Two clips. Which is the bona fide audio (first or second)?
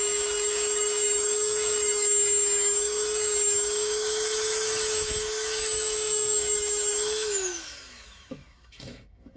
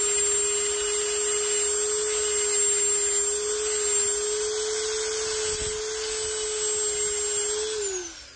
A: second